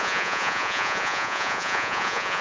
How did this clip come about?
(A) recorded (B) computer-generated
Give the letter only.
B